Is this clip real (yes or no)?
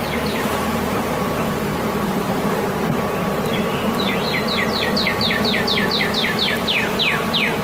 no